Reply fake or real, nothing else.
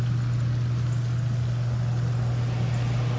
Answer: real